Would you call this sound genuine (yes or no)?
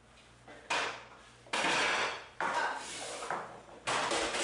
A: yes